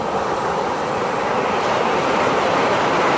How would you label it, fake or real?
real